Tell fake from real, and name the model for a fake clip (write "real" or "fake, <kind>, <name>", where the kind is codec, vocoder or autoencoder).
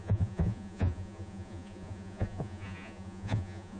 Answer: fake, vocoder, Vocos